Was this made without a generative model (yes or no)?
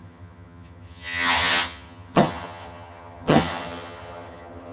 no